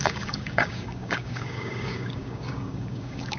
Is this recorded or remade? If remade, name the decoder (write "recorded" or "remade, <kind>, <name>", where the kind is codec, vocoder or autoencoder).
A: remade, codec, DAC